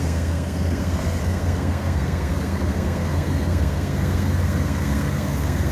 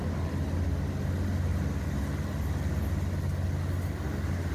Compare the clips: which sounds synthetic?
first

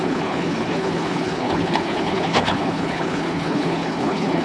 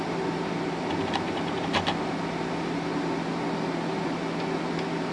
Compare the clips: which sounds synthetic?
first